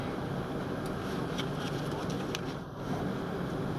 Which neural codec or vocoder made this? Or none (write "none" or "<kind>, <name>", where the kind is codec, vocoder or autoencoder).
none